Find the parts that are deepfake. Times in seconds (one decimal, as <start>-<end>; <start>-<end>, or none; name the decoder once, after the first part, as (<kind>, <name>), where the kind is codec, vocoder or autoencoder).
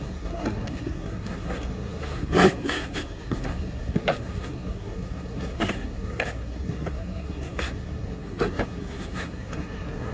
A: 0.0-10.1 (codec, SNAC)